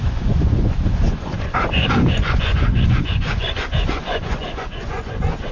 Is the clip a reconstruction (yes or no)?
yes